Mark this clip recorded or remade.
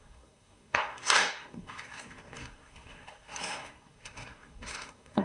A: remade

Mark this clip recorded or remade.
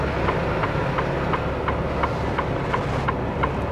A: recorded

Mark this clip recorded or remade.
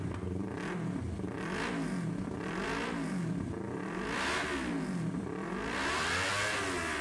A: recorded